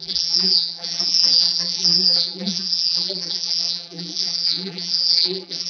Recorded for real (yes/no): no